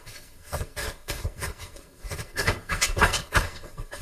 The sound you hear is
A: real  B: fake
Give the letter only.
B